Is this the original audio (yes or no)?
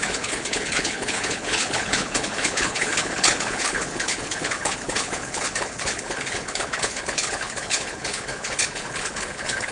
no